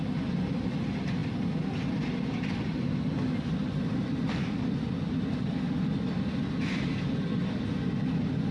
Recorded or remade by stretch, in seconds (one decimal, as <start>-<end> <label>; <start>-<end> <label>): 0.0-8.5 recorded